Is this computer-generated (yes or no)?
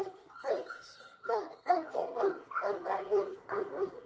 yes